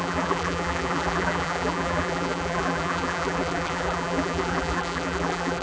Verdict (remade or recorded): remade